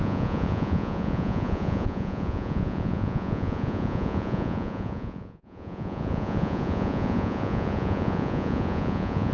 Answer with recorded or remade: remade